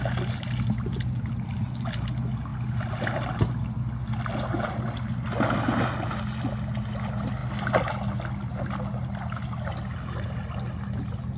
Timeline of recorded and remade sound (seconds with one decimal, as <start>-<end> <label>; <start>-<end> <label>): 0.0-11.4 recorded